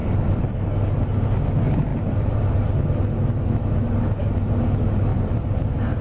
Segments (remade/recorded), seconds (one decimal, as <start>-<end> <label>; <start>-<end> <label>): 0.0-0.5 remade; 0.5-1.9 recorded; 1.9-2.4 remade; 2.4-5.1 recorded; 5.1-6.0 remade